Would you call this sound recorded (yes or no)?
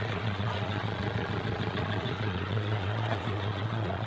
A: no